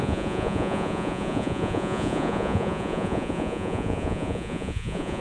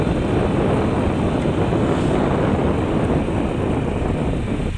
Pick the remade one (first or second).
first